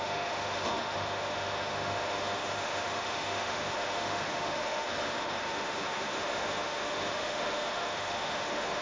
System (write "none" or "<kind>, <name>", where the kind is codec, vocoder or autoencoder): autoencoder, DAC-VAE